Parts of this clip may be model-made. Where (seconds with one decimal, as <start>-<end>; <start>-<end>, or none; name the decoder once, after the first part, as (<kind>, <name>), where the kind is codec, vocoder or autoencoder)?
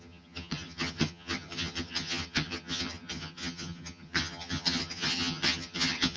0.0-6.2 (vocoder, HiFi-GAN)